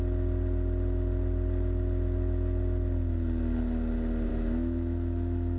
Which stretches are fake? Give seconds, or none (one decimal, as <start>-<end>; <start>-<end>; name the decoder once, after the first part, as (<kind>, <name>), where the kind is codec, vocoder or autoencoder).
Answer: 4.3-5.6 (autoencoder, DAC-VAE)